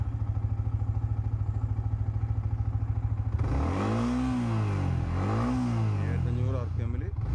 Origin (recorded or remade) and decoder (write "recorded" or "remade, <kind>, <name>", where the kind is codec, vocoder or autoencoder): recorded